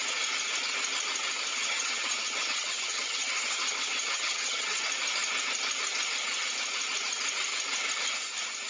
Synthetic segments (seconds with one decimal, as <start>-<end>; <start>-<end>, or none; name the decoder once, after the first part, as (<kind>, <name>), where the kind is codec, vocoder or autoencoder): 1.5-4.8 (vocoder, HiFi-GAN)

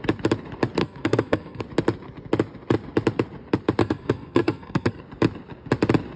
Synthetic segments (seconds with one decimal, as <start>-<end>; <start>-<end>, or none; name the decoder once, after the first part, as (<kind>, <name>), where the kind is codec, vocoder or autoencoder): 0.8-1.6 (codec, SNAC); 3.8-5.0

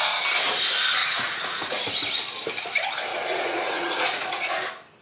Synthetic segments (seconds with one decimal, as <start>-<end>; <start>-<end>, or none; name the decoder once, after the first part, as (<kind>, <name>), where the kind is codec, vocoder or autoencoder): 1.0-1.9 (vocoder, Vocos); 3.1-4.5

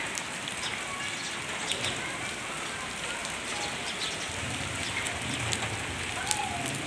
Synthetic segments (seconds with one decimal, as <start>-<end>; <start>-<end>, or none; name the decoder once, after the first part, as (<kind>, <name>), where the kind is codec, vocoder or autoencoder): none

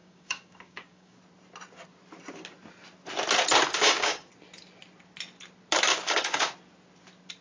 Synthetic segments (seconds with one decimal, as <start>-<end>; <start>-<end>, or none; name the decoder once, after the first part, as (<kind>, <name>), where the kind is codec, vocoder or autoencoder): 0.0-1.2 (codec, DAC); 3.7-4.3; 5.9-6.5